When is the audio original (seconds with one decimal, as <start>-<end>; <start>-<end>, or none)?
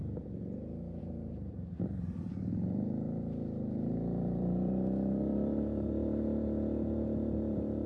0.0-1.0